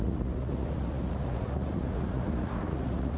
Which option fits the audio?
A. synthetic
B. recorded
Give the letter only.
A